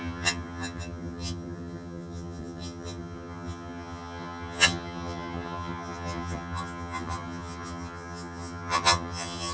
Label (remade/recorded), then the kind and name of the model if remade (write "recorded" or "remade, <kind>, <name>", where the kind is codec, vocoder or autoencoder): remade, vocoder, HiFi-GAN